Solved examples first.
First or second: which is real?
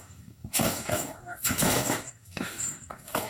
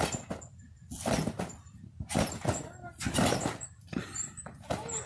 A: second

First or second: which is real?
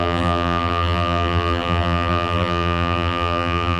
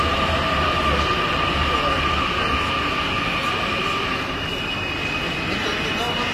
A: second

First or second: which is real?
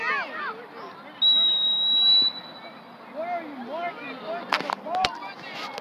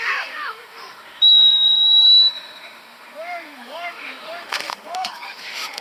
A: first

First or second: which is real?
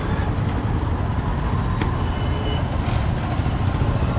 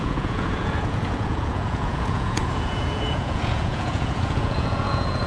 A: first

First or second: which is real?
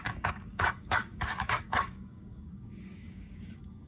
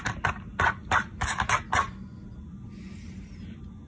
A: second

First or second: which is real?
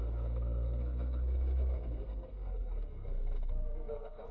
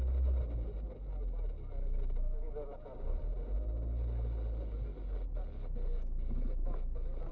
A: second